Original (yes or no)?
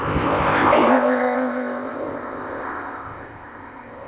no